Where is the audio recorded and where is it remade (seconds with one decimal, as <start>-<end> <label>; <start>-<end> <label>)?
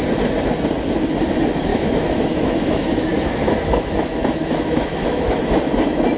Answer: 0.0-1.7 recorded; 1.7-5.4 remade; 5.4-6.2 recorded